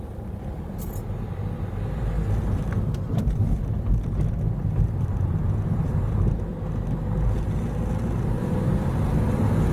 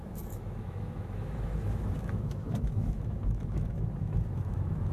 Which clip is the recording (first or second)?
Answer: first